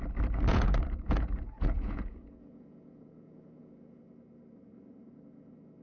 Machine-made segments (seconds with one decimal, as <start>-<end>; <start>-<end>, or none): 0.5-4.0